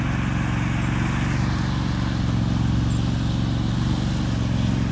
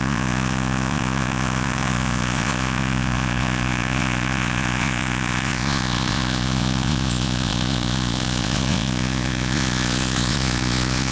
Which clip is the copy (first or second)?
second